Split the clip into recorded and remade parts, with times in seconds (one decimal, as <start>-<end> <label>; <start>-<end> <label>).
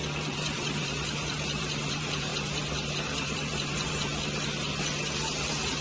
0.0-2.3 remade; 2.3-2.9 recorded; 2.9-4.1 remade; 4.1-5.3 recorded; 5.3-5.8 remade